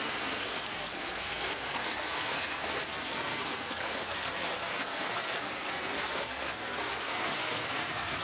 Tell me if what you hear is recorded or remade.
remade